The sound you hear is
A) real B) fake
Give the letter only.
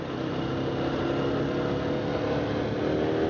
A